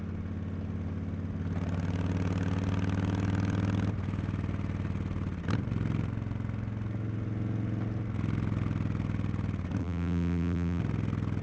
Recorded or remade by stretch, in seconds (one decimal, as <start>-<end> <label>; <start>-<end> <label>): 0.0-9.8 recorded; 9.8-10.8 remade; 10.8-11.4 recorded